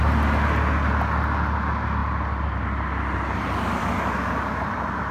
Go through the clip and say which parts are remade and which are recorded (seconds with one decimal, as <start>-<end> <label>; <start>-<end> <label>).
0.0-5.1 recorded